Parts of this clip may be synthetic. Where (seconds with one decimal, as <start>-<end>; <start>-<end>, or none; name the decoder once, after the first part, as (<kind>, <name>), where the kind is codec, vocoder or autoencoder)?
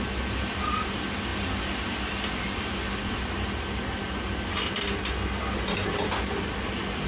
none